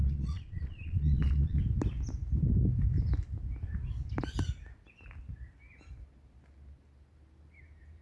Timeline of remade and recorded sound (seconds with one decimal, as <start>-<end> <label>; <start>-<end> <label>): 0.0-1.6 remade; 1.6-8.0 recorded